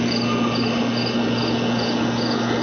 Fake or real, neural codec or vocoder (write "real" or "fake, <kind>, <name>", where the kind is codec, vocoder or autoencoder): real